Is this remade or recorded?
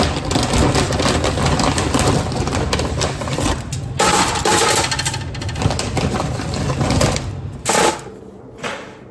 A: recorded